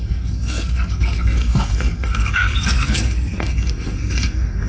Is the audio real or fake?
fake